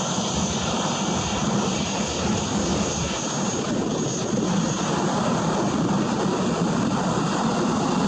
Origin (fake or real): real